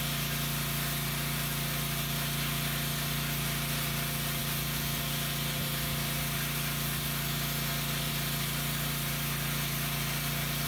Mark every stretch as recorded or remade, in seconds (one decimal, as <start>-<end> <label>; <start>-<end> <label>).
0.0-10.7 recorded

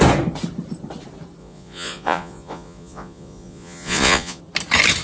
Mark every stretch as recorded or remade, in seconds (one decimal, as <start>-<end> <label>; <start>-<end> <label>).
0.0-1.4 recorded; 1.4-4.4 remade; 4.4-5.0 recorded

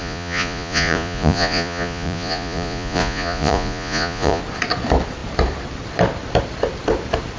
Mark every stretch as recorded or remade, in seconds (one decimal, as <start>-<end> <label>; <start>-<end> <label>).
0.0-4.4 remade; 4.4-7.4 recorded

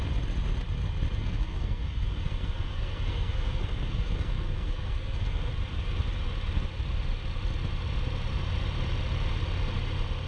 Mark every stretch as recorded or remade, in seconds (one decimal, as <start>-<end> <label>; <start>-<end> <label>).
0.0-1.2 recorded; 1.2-5.5 remade; 5.5-10.3 recorded

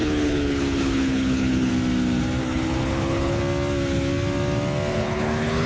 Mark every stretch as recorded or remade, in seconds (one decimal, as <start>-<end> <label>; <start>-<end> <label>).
0.0-1.7 remade; 1.7-2.4 recorded; 2.4-3.4 remade; 3.4-4.9 recorded; 4.9-5.7 remade